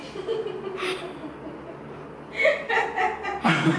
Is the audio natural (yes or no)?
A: yes